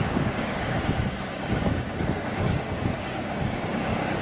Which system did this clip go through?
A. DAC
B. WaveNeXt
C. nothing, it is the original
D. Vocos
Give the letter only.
A